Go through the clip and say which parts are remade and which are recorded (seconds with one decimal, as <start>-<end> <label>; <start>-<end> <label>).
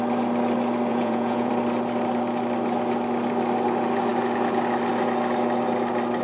0.0-0.9 recorded; 0.9-1.5 remade; 1.5-6.2 recorded